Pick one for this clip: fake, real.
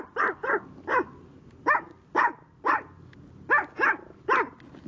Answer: real